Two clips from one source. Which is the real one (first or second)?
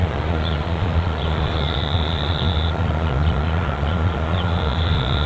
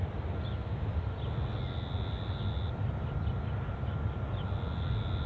second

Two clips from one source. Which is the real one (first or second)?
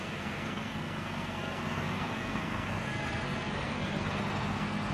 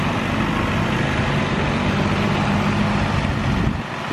second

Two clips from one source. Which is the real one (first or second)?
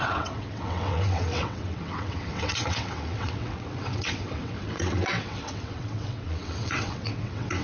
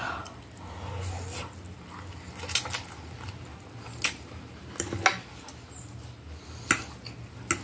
second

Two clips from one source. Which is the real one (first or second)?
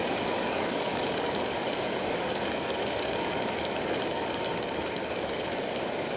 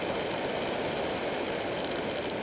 second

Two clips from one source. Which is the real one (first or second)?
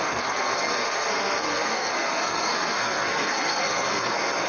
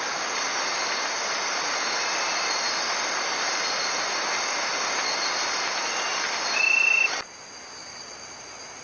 second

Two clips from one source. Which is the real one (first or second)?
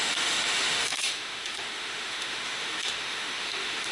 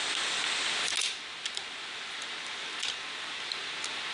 second